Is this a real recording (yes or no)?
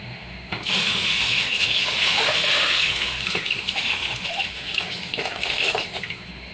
no